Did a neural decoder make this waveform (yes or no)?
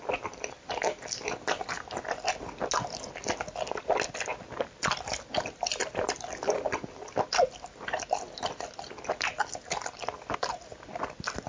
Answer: no